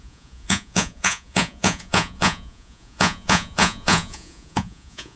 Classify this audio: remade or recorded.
remade